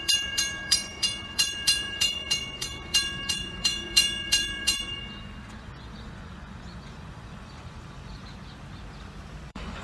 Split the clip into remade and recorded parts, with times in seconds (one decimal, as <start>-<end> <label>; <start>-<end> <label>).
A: 0.0-8.2 remade; 8.2-9.4 recorded; 9.4-9.8 remade